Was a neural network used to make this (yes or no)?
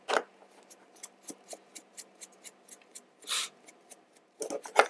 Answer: no